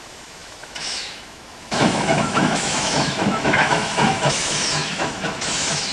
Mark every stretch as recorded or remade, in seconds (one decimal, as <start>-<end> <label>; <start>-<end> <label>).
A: 0.0-5.9 remade